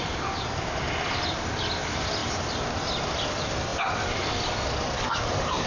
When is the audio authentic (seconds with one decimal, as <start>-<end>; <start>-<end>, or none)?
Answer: 0.0-5.7